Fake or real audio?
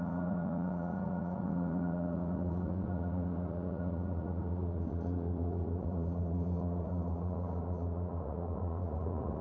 fake